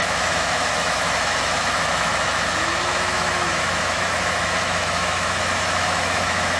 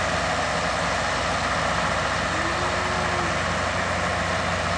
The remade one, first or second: first